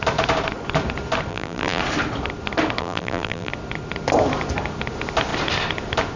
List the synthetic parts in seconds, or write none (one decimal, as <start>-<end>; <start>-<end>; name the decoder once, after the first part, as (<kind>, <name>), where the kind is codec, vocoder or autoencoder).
1.3-1.8 (vocoder, BigVGAN v2); 2.8-3.5